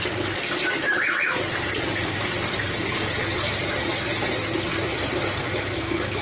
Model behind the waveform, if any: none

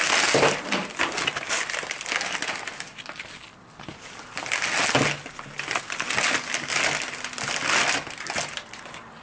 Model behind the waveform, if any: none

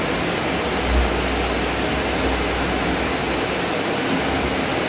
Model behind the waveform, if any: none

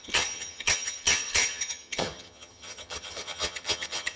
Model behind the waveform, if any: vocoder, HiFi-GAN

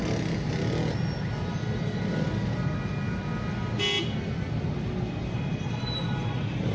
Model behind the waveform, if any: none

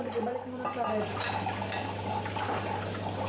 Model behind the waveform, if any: none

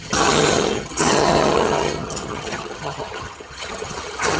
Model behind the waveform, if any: vocoder, HiFi-GAN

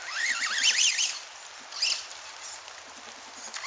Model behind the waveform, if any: none